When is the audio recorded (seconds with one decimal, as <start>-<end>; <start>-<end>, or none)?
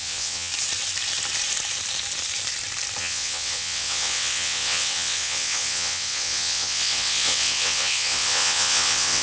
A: 0.5-3.0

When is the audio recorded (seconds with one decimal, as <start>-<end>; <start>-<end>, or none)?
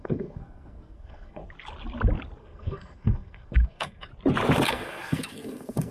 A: 1.4-2.4; 4.1-4.7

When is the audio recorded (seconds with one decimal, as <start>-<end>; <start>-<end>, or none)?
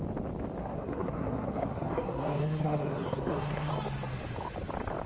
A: 0.0-0.6; 3.7-5.1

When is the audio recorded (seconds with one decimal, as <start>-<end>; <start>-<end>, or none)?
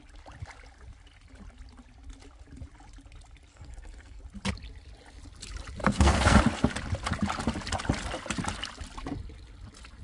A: 0.0-3.5; 4.2-5.8; 6.4-10.0